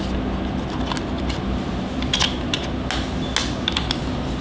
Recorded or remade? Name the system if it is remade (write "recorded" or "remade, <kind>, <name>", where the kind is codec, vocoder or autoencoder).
recorded